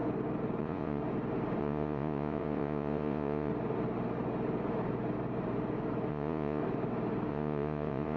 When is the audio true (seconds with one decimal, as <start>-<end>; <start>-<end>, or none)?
0.0-0.6; 1.0-1.6; 3.5-6.1; 6.6-7.3